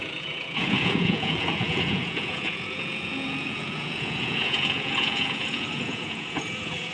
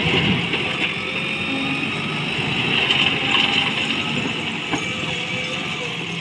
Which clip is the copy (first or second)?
first